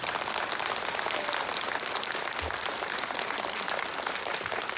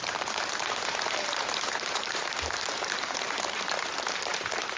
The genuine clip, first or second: first